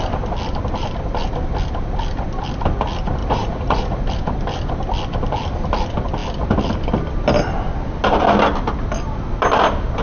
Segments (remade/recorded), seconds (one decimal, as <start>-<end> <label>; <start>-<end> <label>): 0.0-3.2 recorded; 3.2-4.0 remade; 4.0-10.0 recorded